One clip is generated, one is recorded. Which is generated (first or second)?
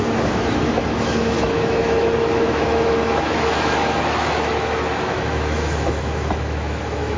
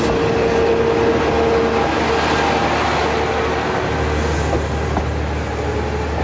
first